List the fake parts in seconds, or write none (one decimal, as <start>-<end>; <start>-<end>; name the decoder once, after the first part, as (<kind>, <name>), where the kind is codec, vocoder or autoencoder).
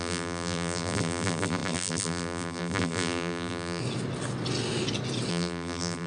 0.0-3.8 (vocoder, BigVGAN v2); 5.3-6.1